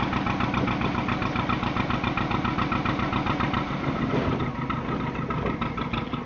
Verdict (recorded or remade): recorded